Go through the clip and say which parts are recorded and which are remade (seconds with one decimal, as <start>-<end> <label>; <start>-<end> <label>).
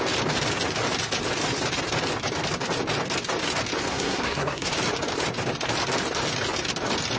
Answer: 0.0-3.9 recorded; 3.9-4.7 remade; 4.7-7.2 recorded